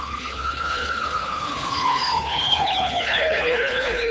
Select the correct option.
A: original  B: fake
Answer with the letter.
B